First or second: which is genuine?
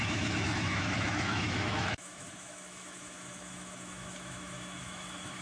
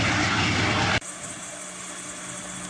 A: second